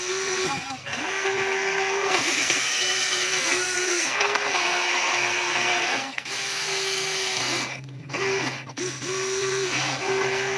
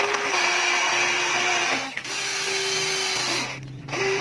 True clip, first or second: second